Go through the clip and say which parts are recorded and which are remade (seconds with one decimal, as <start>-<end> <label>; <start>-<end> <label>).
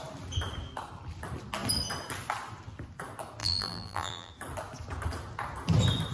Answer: 0.0-3.4 recorded; 3.4-4.3 remade; 4.3-6.1 recorded